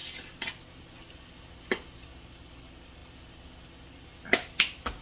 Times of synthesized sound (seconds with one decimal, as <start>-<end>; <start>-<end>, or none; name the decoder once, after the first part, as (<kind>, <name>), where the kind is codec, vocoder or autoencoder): none